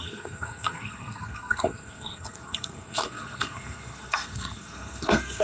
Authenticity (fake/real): fake